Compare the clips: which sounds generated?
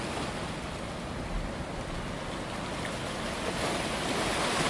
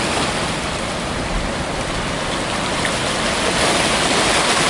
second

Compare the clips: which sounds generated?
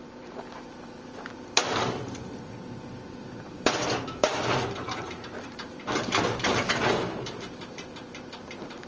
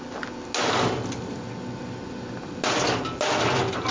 first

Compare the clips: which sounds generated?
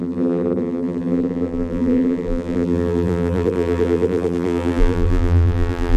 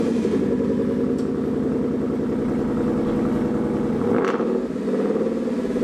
first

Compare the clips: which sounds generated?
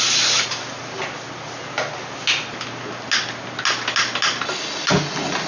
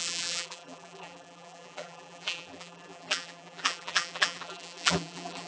second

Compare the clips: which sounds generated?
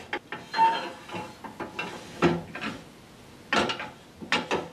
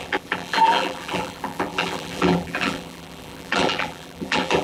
second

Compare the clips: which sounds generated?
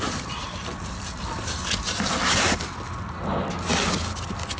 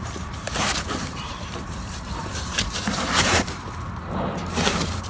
second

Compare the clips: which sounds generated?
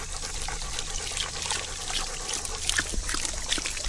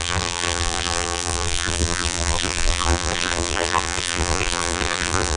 second